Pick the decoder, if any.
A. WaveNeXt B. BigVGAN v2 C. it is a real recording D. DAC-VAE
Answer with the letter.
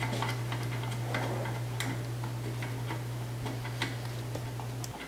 C